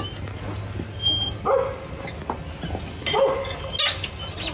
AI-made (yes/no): no